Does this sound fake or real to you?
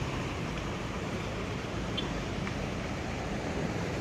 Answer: fake